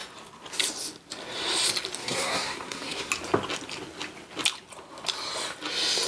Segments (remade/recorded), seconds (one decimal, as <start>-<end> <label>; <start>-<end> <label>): 0.0-2.0 recorded; 2.0-3.1 remade; 3.1-6.1 recorded